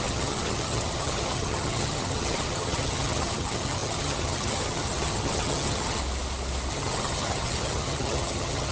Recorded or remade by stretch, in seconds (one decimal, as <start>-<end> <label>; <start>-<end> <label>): 0.0-6.0 remade; 6.0-6.7 recorded; 6.7-8.7 remade